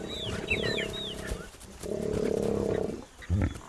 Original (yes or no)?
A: yes